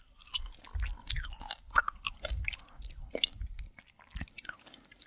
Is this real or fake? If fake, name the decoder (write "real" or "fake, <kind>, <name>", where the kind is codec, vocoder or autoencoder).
real